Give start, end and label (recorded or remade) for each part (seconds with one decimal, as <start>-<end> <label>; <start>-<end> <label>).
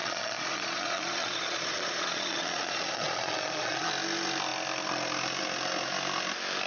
0.0-3.9 remade; 3.9-6.7 recorded